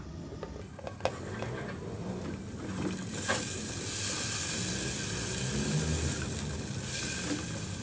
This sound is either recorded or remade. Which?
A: recorded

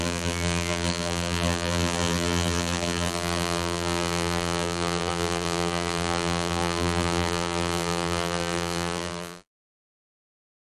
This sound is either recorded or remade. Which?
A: remade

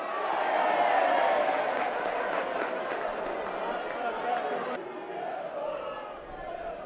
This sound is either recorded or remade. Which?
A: recorded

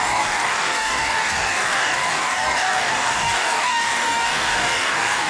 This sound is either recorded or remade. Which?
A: remade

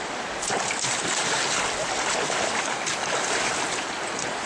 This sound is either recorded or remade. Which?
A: recorded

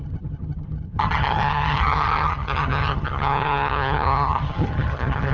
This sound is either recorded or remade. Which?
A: remade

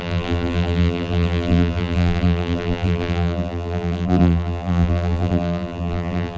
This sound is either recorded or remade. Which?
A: remade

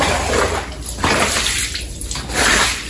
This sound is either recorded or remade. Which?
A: remade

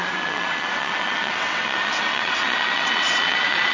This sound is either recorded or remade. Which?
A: remade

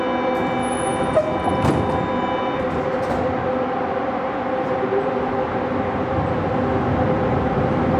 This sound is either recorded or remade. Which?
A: recorded